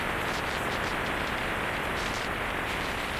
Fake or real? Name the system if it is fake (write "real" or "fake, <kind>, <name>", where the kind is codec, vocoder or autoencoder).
real